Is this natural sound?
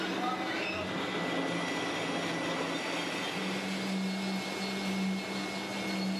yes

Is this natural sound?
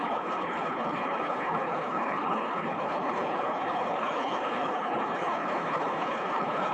no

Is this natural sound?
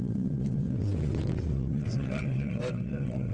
no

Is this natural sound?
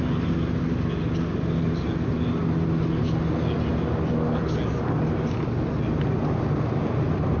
yes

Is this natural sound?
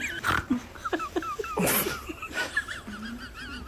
yes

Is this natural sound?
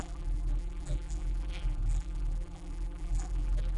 no